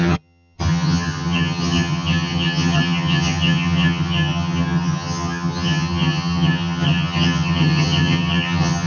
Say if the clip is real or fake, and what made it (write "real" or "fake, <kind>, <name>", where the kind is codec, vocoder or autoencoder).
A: fake, vocoder, HiFi-GAN